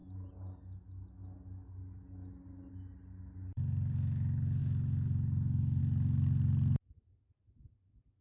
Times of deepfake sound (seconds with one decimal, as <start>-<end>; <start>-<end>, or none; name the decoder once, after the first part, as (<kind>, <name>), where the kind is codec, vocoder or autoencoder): none